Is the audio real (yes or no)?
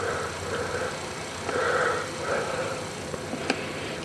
yes